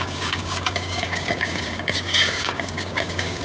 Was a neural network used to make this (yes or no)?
yes